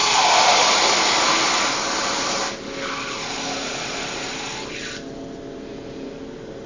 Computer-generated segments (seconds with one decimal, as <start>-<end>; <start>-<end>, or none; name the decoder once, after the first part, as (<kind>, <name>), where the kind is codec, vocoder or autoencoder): none